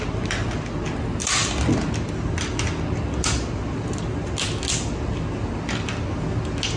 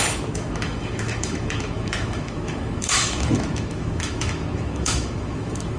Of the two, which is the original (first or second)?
first